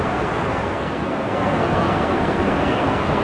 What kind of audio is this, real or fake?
fake